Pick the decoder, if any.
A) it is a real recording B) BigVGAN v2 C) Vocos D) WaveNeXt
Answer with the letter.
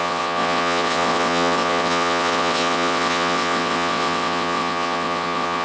D